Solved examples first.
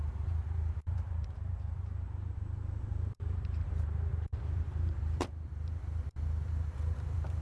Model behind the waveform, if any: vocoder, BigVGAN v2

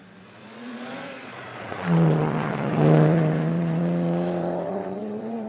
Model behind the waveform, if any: vocoder, Vocos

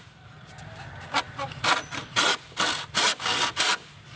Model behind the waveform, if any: none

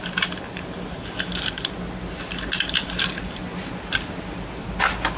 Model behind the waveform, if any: vocoder, BigVGAN v2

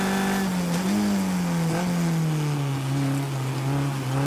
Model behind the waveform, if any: none